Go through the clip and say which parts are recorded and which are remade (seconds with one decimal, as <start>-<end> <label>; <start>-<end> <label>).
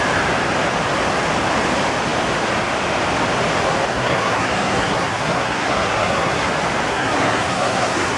0.0-3.9 recorded; 3.9-6.5 remade; 6.5-6.9 recorded; 6.9-8.2 remade